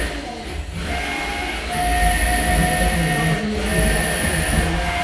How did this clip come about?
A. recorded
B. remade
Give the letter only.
A